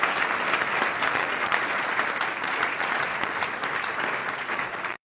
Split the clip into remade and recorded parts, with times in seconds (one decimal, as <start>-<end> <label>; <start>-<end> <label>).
0.0-1.1 recorded; 1.1-1.9 remade; 1.9-2.4 recorded; 2.4-3.3 remade; 3.3-4.2 recorded; 4.2-5.1 remade